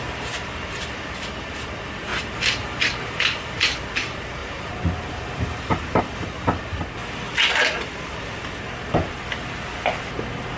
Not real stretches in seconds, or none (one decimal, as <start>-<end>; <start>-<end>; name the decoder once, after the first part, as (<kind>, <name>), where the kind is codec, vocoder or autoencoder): 2.1-3.8 (vocoder, BigVGAN v2); 4.4-6.0

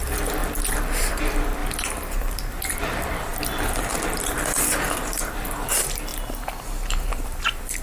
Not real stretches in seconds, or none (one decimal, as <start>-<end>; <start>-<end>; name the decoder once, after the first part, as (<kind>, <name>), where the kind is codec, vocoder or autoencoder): 0.0-1.6 (vocoder, BigVGAN v2); 2.2-3.3; 3.9-6.1; 7.1-7.8

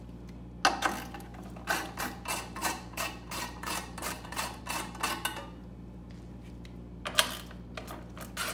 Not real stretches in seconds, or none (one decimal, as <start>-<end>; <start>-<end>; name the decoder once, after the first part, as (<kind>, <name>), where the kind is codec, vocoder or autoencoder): 2.6-4.6 (vocoder, BigVGAN v2)

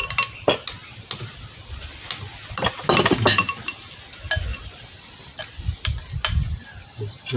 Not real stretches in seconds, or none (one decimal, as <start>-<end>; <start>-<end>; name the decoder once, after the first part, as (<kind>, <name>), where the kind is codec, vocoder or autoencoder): none

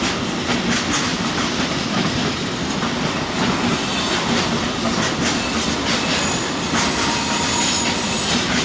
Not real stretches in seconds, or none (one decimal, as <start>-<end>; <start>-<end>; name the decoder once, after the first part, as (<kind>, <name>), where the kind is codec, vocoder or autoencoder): 1.1-2.2 (vocoder, BigVGAN v2)

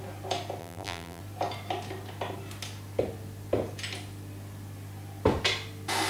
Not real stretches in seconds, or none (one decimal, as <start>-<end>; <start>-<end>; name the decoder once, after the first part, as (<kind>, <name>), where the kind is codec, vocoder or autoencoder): 0.6-1.2 (vocoder, BigVGAN v2)

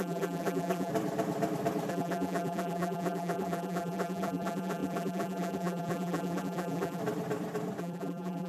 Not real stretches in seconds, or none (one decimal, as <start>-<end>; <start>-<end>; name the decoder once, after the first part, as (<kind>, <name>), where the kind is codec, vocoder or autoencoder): 0.0-0.9 (vocoder, BigVGAN v2); 1.9-7.0; 7.8-8.5